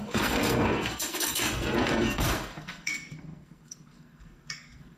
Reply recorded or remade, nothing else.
remade